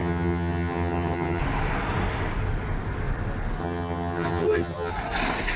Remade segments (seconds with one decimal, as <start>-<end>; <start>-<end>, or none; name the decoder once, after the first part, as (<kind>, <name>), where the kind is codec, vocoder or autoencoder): 0.0-1.4 (vocoder, HiFi-GAN); 3.6-4.9